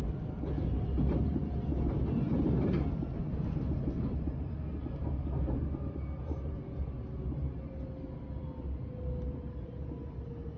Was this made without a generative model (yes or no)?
yes